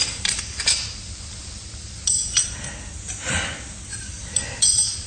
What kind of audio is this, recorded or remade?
recorded